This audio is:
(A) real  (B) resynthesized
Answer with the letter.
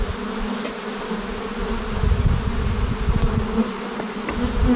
A